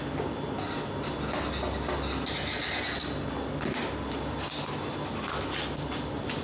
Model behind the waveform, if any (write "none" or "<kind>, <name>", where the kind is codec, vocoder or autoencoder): none